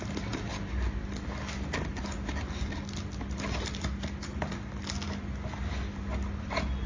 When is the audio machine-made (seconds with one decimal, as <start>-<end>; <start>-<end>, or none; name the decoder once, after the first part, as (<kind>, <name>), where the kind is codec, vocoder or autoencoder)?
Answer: none